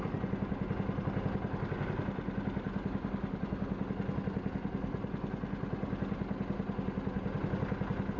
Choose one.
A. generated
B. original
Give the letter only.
B